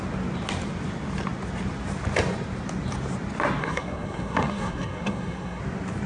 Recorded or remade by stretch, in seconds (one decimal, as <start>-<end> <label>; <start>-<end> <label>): 0.0-3.6 recorded; 3.6-5.6 remade; 5.6-6.1 recorded